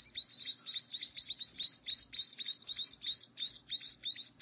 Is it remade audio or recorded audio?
recorded